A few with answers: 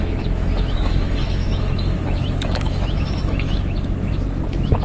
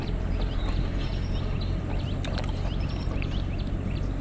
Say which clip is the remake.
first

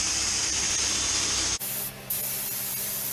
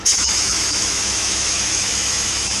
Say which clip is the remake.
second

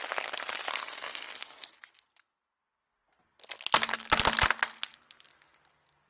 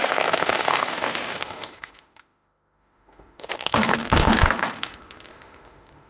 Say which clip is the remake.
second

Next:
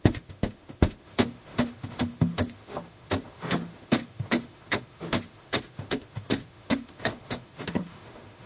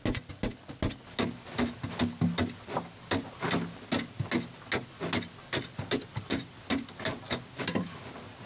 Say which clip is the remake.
first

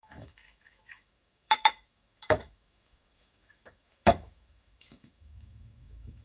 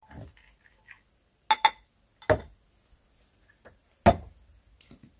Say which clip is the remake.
first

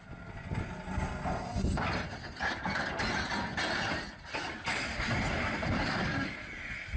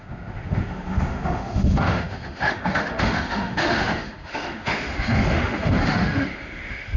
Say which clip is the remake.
second